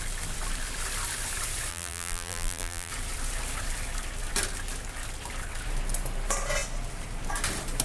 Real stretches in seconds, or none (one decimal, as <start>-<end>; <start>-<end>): 0.0-1.7; 2.9-7.8